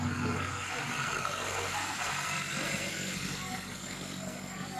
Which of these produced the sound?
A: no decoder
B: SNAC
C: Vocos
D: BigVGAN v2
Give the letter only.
B